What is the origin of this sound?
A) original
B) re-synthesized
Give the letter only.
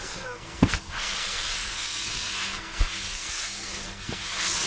B